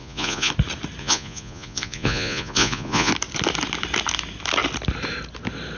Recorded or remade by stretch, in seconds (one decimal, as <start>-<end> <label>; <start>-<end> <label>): 0.0-0.5 remade; 0.5-1.0 recorded; 1.0-3.1 remade; 3.1-5.8 recorded